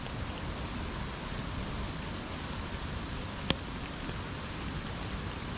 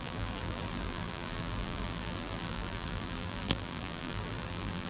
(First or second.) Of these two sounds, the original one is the first